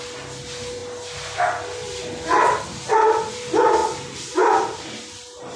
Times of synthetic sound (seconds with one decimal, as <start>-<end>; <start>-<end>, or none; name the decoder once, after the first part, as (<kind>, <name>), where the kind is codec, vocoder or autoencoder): none